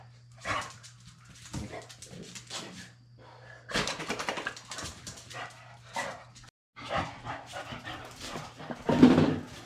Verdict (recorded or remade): recorded